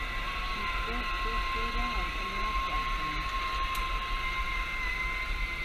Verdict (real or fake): real